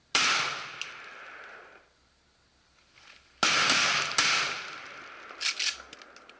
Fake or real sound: real